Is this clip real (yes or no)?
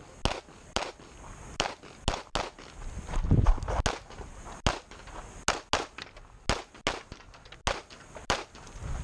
yes